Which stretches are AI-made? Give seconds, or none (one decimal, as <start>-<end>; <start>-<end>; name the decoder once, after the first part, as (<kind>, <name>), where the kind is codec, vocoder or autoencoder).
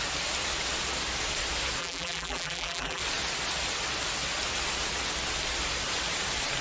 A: 1.8-3.0 (vocoder, BigVGAN v2)